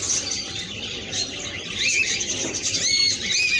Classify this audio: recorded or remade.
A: recorded